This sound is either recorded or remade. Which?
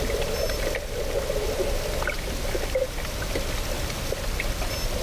recorded